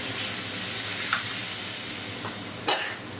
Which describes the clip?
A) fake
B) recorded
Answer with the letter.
B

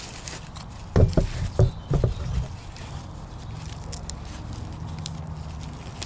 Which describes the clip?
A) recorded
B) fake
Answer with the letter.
A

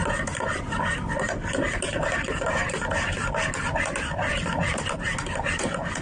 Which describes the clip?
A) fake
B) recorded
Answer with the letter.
B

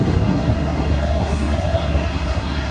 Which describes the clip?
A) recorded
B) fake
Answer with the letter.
B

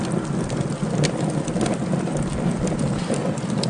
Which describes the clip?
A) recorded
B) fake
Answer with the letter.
A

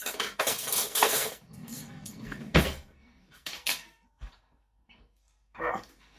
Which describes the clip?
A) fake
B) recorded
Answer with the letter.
A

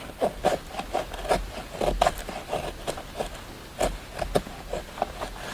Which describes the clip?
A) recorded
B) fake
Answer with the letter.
A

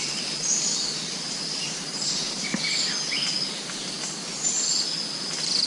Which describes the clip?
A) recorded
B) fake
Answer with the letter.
A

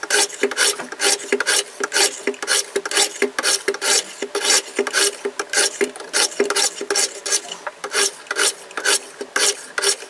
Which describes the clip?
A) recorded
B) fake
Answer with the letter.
A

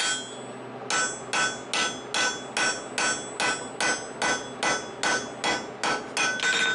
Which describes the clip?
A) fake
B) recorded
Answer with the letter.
B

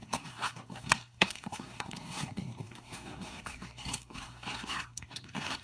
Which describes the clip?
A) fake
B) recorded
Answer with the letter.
A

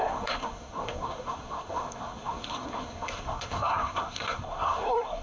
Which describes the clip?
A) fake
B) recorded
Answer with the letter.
A